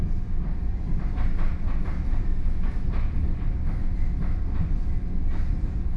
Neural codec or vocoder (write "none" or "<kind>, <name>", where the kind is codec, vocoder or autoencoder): none